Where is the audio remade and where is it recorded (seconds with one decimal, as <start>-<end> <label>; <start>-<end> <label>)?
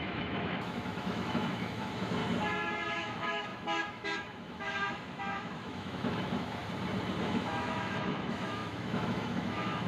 0.0-2.2 remade; 2.2-2.9 recorded; 2.9-6.6 remade; 6.6-7.2 recorded; 7.2-9.9 remade